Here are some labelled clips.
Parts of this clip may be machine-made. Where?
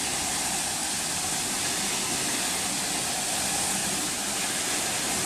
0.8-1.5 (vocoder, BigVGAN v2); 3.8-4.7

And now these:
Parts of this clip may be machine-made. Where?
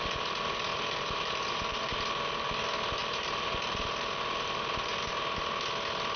0.7-2.0 (vocoder, BigVGAN v2); 3.0-5.0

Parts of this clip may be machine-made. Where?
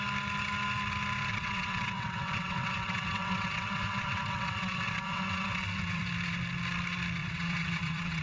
1.3-6.0 (vocoder, WaveNeXt); 7.2-8.2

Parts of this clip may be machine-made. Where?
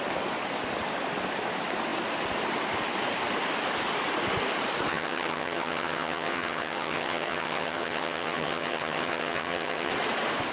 4.9-9.9 (vocoder, HiFi-GAN)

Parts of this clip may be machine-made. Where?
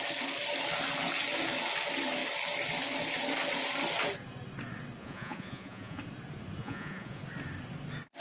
5.0-6.0 (vocoder, Vocos); 6.6-7.2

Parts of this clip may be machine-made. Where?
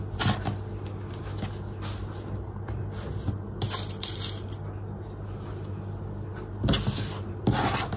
none